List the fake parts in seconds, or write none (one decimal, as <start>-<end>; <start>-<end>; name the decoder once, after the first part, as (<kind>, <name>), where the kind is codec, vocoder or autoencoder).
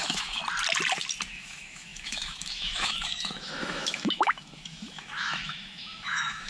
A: 0.0-0.4 (autoencoder, DAC-VAE); 1.3-6.5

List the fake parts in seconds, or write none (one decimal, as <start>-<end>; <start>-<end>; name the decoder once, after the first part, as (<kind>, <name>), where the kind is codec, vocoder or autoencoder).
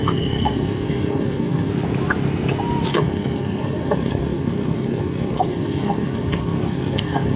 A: 0.0-1.7 (codec, SNAC); 2.9-7.4